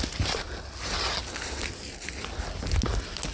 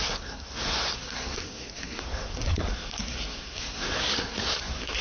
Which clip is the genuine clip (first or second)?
first